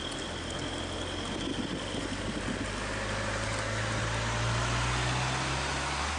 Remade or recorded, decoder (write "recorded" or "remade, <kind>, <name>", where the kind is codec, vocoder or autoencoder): recorded